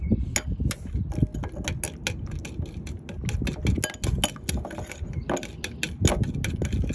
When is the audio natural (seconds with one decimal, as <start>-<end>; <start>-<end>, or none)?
0.0-6.9

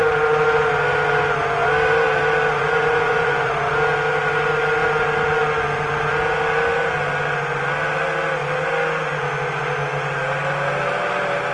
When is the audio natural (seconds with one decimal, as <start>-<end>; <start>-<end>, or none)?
0.0-2.6; 3.7-11.5

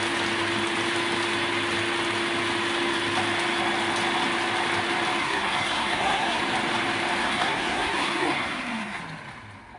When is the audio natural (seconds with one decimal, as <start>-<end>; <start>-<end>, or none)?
0.0-5.2; 6.4-7.2; 9.0-9.8

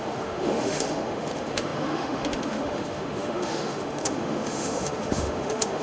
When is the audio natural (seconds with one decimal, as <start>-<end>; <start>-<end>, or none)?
none

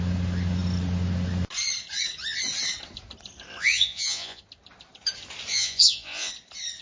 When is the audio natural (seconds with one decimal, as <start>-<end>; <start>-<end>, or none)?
0.0-3.6; 4.4-5.5; 6.3-6.8

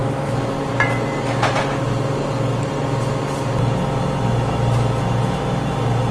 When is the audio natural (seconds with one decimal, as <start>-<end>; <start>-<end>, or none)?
0.0-6.1